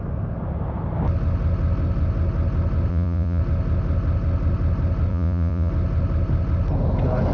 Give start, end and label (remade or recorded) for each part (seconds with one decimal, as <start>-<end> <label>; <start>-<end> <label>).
0.0-2.9 recorded; 2.9-3.4 remade; 3.4-5.1 recorded; 5.1-5.7 remade; 5.7-7.3 recorded